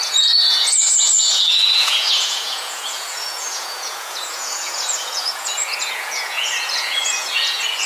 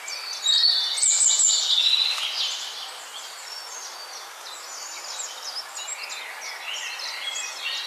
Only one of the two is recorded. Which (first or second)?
second